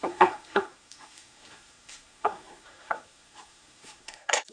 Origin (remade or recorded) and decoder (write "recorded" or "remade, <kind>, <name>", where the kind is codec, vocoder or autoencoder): remade, codec, SNAC